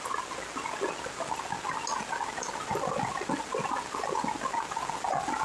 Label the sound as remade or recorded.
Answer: recorded